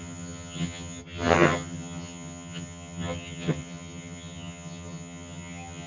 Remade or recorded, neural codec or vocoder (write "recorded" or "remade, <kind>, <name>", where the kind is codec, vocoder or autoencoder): remade, vocoder, HiFi-GAN